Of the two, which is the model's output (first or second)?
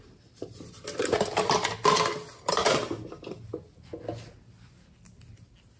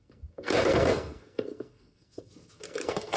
second